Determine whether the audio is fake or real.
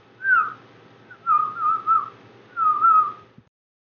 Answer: real